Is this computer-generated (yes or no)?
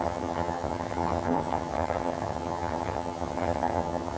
yes